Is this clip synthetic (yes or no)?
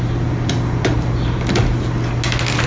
no